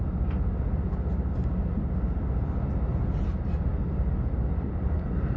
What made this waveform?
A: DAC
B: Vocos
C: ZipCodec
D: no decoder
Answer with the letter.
D